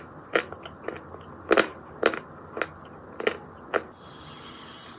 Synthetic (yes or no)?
no